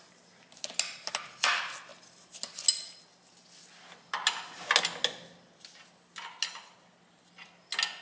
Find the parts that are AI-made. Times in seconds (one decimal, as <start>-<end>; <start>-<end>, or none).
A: none